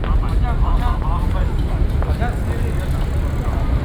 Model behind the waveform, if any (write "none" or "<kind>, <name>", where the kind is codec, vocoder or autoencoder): none